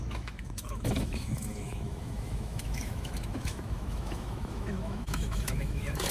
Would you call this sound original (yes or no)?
no